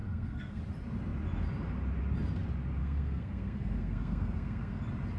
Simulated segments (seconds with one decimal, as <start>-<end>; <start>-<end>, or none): 0.0-0.6; 2.8-4.8